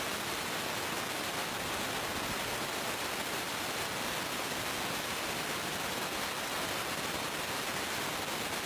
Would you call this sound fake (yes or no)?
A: no